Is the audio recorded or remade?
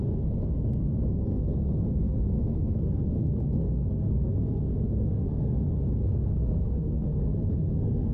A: remade